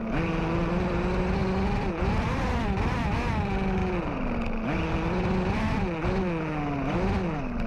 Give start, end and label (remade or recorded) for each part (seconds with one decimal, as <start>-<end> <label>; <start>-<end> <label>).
0.0-7.7 recorded